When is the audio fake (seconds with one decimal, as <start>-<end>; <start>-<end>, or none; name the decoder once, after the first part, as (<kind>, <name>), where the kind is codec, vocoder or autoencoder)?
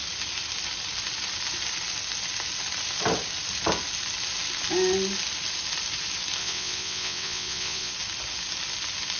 6.4-7.9 (vocoder, WaveNeXt)